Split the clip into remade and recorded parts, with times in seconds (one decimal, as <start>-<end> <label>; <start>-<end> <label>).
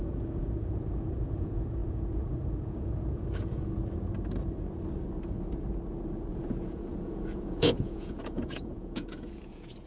0.0-3.8 remade; 3.8-6.3 recorded; 6.3-9.9 remade